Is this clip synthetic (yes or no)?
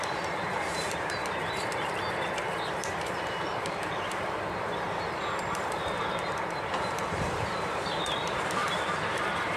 yes